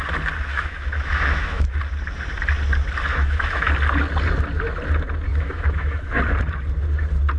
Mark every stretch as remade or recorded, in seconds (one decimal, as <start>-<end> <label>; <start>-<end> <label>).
0.0-0.5 recorded; 0.5-1.8 remade; 1.8-3.1 recorded; 3.1-3.7 remade; 3.7-5.3 recorded; 5.3-6.1 remade; 6.1-7.4 recorded